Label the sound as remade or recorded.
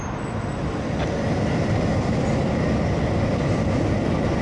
recorded